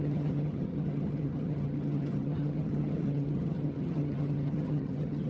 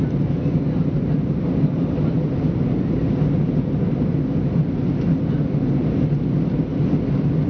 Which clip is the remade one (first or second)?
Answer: first